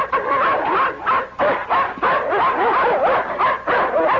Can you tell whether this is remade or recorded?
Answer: recorded